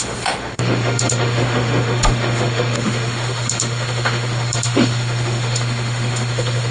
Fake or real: fake